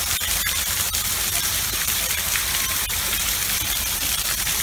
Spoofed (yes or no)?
yes